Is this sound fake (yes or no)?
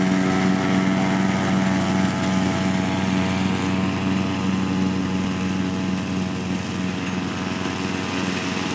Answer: no